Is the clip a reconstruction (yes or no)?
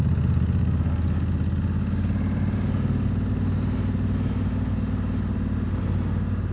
no